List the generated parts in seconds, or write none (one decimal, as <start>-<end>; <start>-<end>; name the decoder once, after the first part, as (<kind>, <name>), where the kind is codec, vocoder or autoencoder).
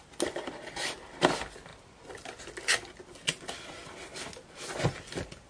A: none